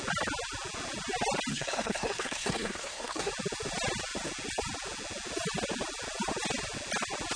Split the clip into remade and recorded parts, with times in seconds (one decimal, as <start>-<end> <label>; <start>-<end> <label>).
0.0-1.5 recorded; 1.5-3.3 remade; 3.3-7.4 recorded